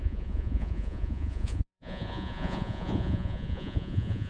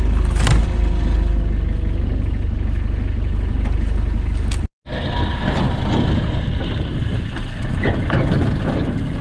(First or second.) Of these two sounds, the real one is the second